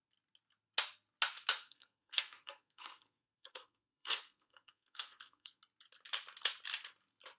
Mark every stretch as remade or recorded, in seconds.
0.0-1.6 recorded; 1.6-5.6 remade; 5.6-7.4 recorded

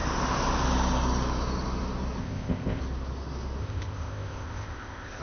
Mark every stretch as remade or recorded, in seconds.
0.0-2.2 recorded; 2.2-2.8 remade; 2.8-3.6 recorded; 3.6-5.2 remade